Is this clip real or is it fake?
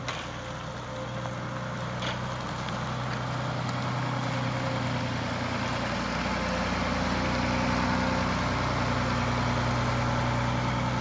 real